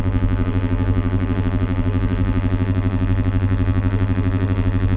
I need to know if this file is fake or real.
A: fake